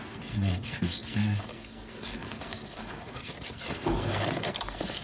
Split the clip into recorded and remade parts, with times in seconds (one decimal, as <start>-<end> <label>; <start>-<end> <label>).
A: 0.0-5.0 remade